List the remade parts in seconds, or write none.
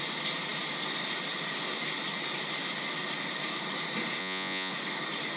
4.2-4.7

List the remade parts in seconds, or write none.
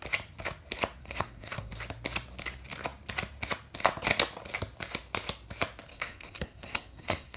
1.0-1.7; 5.9-7.4